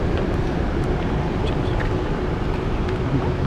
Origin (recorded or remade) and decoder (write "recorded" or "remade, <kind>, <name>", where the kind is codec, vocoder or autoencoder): remade, vocoder, BigVGAN v2